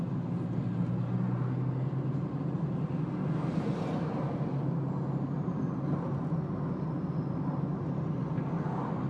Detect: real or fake real